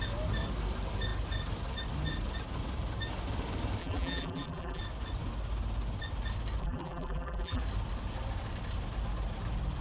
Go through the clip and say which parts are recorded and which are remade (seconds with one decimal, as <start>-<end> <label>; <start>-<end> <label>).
0.0-3.8 recorded; 3.8-4.8 remade; 4.8-6.6 recorded; 6.6-7.6 remade; 7.6-9.8 recorded